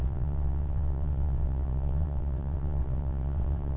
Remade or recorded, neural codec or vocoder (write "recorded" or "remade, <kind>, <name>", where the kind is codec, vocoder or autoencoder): remade, vocoder, WaveNeXt